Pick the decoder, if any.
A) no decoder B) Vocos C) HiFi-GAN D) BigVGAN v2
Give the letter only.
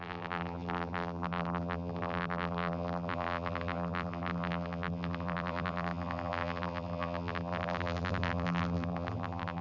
D